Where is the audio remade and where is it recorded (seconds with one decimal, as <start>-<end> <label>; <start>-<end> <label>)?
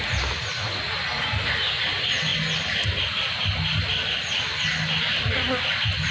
0.0-6.1 recorded